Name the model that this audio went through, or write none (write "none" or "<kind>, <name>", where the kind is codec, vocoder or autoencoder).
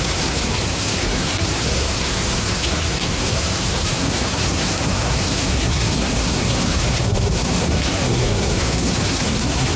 codec, SNAC